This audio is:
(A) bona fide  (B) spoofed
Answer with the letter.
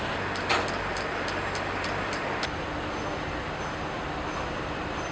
A